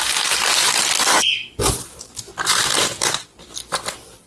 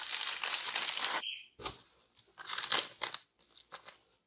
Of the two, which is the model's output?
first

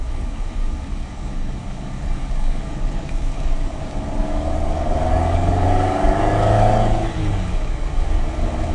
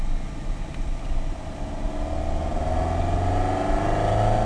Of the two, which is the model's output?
first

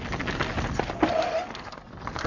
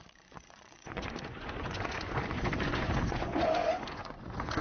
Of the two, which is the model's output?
second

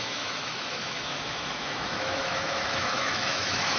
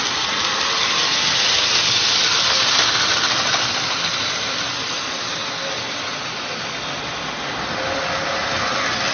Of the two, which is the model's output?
first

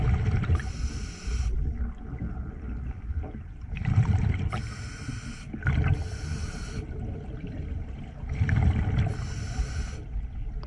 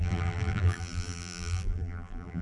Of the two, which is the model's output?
second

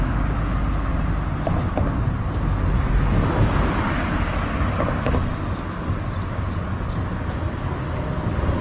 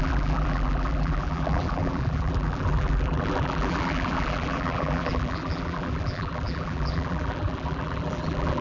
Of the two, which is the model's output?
second